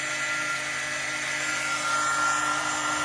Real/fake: real